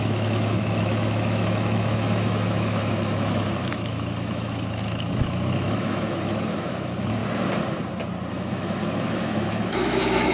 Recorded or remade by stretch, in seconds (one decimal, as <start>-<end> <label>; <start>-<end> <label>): 0.0-7.2 remade; 7.2-8.3 recorded; 8.3-10.3 remade